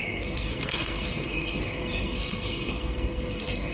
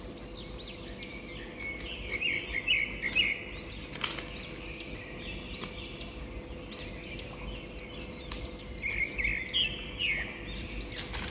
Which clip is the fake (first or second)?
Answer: first